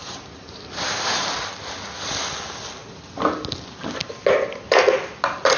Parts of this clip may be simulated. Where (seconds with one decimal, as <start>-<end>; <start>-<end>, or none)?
0.0-1.2